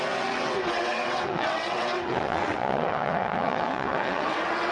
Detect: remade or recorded remade